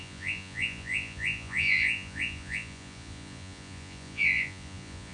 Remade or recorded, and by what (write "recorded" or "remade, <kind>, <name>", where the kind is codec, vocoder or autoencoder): remade, vocoder, Vocos